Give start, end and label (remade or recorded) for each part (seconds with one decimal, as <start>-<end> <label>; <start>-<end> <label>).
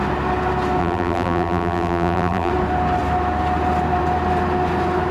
0.0-0.8 recorded; 0.8-2.5 remade; 2.5-5.1 recorded